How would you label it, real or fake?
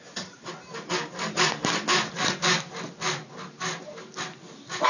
real